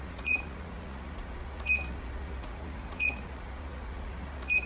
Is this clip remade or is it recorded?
remade